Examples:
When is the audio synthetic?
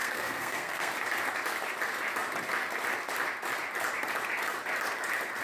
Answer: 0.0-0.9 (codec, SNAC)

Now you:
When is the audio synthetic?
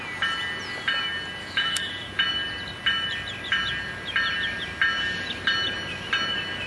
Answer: 1.4-1.9 (autoencoder, DAC-VAE)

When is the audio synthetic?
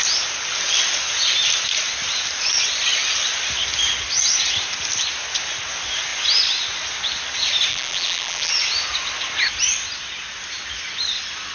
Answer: 7.7-8.5 (vocoder, BigVGAN v2)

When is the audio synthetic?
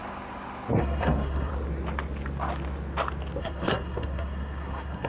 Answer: 0.8-1.5 (codec, SNAC); 3.4-5.1